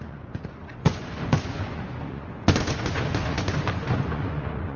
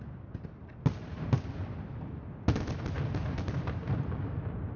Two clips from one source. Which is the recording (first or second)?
second